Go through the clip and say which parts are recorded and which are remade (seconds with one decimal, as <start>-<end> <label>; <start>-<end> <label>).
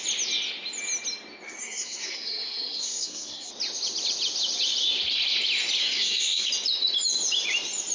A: 0.0-1.6 recorded; 1.6-3.5 remade; 3.5-5.8 recorded; 5.8-6.5 remade; 6.5-7.9 recorded